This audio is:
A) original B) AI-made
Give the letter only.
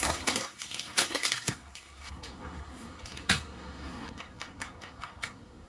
B